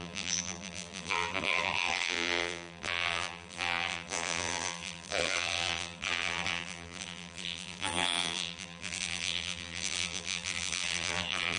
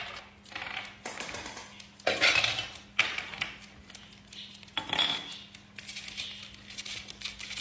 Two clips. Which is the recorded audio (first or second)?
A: second